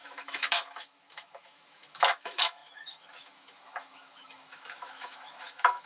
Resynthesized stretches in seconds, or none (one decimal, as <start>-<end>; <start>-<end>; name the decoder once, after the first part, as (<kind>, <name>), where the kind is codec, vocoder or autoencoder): 0.0-5.9 (autoencoder, DAC-VAE)